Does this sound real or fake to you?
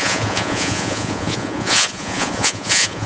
fake